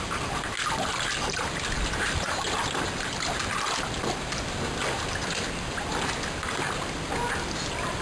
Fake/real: real